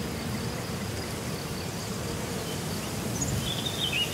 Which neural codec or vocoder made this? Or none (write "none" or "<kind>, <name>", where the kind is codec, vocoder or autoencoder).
none